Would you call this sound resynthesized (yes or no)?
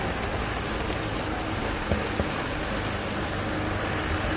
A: no